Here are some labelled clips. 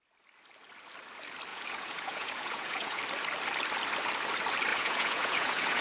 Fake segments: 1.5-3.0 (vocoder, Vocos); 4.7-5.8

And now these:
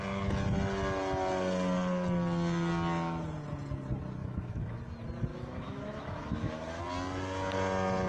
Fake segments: 4.2-4.8 (autoencoder, DAC-VAE); 5.3-6.8

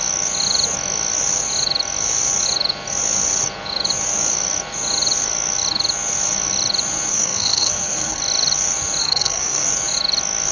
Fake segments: 7.1-8.2 (codec, SNAC); 9.0-9.7

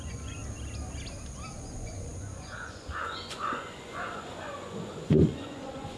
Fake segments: 0.0-0.4 (vocoder, Vocos); 1.6-6.0